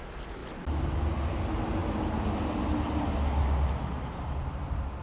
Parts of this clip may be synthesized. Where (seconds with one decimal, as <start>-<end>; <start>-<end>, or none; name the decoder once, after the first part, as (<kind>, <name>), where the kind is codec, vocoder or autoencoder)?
none